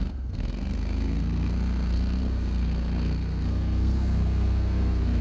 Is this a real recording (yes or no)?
no